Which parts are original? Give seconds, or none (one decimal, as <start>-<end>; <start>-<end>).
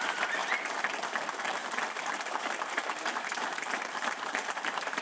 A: 0.4-1.1